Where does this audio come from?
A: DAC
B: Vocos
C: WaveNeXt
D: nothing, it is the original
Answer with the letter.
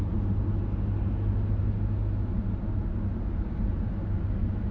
D